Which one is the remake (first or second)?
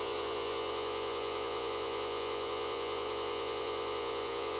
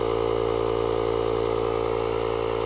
first